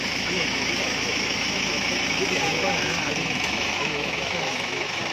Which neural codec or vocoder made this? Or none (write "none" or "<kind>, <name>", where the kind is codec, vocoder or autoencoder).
autoencoder, DAC-VAE